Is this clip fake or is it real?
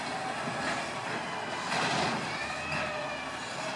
real